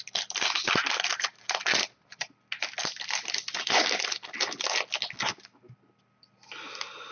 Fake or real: real